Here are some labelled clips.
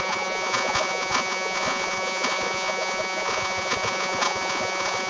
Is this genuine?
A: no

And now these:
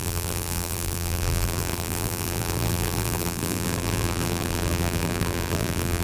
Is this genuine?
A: no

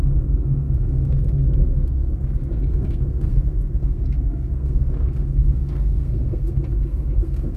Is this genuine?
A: no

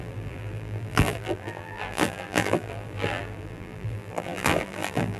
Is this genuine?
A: no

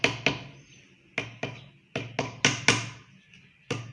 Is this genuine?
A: yes